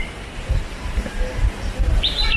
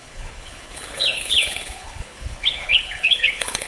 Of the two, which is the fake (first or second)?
second